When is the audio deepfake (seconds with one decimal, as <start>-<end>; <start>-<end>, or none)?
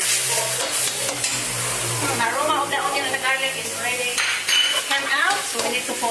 none